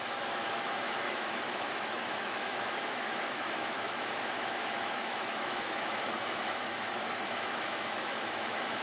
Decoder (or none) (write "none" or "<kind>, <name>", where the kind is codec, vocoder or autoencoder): autoencoder, DAC-VAE